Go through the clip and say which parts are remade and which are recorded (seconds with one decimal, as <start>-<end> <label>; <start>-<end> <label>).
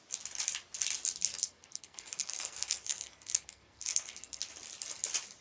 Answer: 0.0-1.3 recorded; 1.3-4.4 remade; 4.4-5.4 recorded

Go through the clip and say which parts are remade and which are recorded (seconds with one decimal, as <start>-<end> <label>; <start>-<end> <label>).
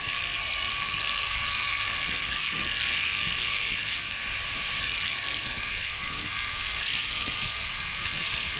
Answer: 0.0-4.2 remade; 4.2-4.8 recorded; 4.8-8.6 remade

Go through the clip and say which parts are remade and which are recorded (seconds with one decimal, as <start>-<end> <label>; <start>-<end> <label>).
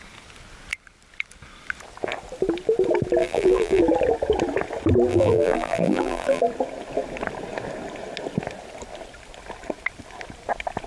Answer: 0.0-3.2 recorded; 3.2-3.8 remade; 3.8-5.1 recorded; 5.1-6.4 remade; 6.4-10.9 recorded